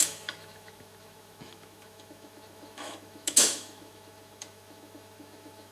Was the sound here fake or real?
fake